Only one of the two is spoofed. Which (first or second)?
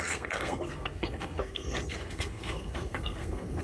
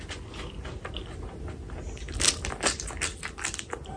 first